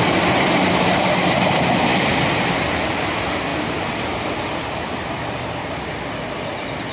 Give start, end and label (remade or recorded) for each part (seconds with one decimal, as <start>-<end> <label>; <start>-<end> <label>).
0.0-6.9 recorded